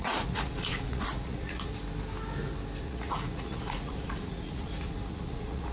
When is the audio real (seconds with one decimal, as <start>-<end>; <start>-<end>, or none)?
1.7-2.8

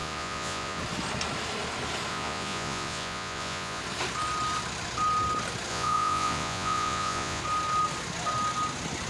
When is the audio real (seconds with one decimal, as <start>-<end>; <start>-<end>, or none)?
0.8-2.1; 3.8-5.7; 7.4-9.1

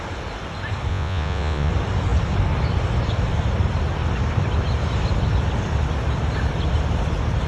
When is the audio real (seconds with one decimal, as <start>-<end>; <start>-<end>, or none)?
0.0-0.9; 1.7-7.5

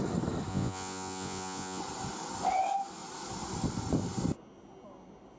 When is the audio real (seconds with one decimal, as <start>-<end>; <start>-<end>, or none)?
0.0-0.5; 1.8-5.4

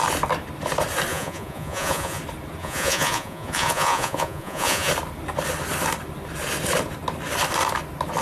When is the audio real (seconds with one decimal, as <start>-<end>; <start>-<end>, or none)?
0.0-1.1; 2.2-2.6; 4.9-8.2